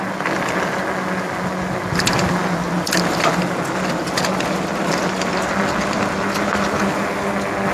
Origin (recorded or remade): recorded